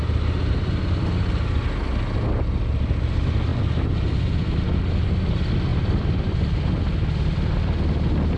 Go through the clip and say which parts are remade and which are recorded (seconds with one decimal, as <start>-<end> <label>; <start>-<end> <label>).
0.0-5.7 recorded; 5.7-6.4 remade; 6.4-8.4 recorded